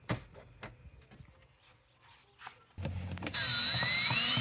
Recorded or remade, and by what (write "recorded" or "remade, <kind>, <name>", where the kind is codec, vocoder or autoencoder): recorded